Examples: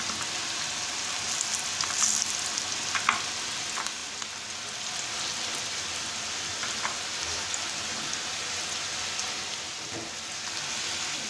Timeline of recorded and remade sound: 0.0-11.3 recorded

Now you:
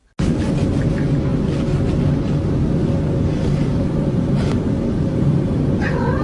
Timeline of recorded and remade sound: 0.0-3.3 recorded; 3.3-5.8 remade; 5.8-6.2 recorded

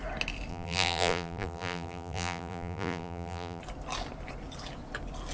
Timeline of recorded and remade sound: 0.0-0.5 recorded; 0.5-3.6 remade; 3.6-5.3 recorded